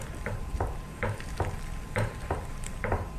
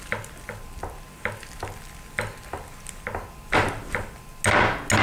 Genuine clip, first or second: second